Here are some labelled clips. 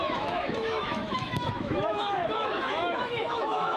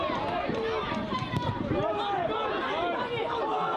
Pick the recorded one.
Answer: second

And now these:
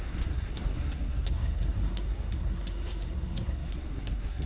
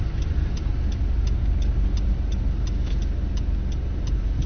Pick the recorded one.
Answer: second